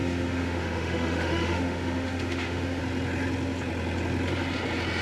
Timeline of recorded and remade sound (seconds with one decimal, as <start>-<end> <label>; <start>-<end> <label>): 0.0-2.8 remade; 2.8-5.0 recorded